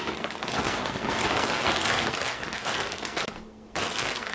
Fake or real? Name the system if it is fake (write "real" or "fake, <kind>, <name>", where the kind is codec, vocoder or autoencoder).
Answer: fake, codec, SNAC